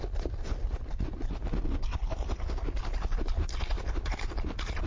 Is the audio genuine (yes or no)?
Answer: yes